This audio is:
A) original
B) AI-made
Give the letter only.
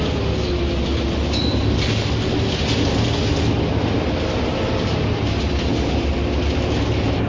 A